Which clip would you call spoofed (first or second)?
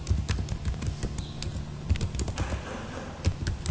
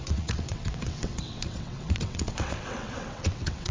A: second